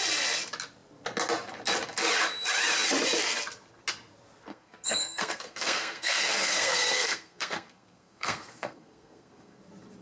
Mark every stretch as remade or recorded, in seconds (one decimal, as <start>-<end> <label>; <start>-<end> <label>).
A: 0.0-4.5 recorded; 4.5-9.6 remade; 9.6-10.0 recorded